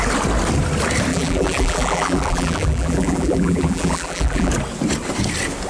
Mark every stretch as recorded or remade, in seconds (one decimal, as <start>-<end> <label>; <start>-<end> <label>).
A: 0.0-1.1 recorded; 1.1-4.5 remade; 4.5-5.7 recorded